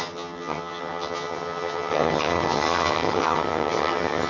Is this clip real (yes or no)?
no